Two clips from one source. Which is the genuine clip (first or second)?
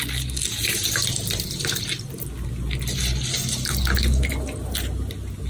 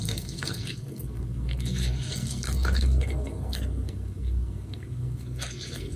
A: first